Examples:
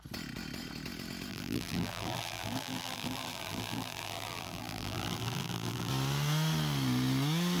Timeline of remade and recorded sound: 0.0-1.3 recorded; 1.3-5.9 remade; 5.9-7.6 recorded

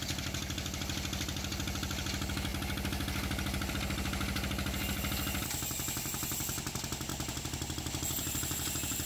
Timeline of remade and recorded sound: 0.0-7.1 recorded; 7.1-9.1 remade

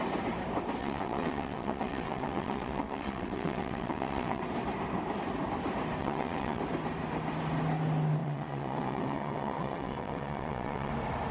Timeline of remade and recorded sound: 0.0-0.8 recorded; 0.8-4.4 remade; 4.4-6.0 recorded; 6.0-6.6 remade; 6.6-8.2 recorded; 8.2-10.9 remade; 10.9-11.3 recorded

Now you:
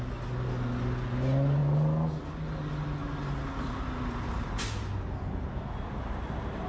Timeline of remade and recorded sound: 0.0-6.7 recorded

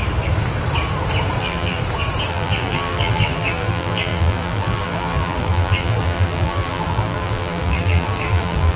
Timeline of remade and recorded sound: 0.0-1.4 recorded; 1.4-1.8 remade; 1.8-2.3 recorded; 2.3-8.8 remade

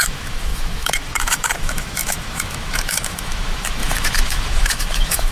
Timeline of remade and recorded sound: 0.0-5.3 remade